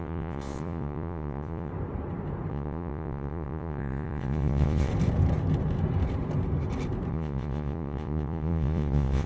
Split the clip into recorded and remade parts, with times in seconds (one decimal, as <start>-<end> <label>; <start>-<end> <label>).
0.0-1.7 remade; 1.7-2.5 recorded; 2.5-4.9 remade; 4.9-7.1 recorded; 7.1-9.3 remade